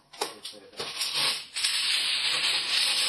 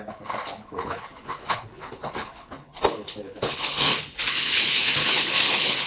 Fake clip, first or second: second